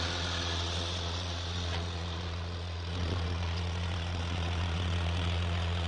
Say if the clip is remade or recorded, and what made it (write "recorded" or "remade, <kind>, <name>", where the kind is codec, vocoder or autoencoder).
remade, vocoder, Vocos